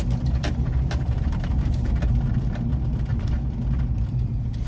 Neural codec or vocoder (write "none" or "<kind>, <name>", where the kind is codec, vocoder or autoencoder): none